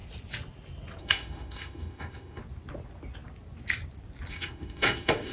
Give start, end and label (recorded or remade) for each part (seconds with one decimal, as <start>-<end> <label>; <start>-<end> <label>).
0.0-1.0 recorded; 1.0-2.4 remade; 2.4-4.3 recorded; 4.3-5.3 remade